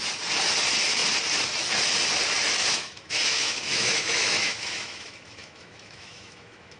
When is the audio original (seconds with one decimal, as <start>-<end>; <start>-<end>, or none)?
0.0-2.6